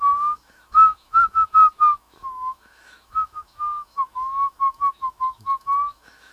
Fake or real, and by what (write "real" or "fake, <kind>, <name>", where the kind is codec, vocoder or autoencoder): fake, autoencoder, DAC-VAE